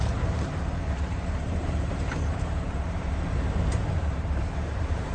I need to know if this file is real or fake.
fake